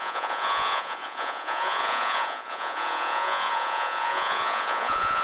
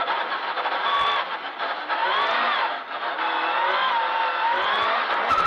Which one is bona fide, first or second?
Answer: second